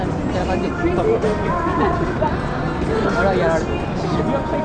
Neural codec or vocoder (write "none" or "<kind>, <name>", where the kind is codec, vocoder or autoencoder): none